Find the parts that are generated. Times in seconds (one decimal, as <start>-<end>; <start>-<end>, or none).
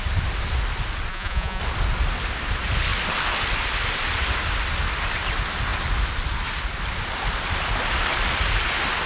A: 1.1-1.6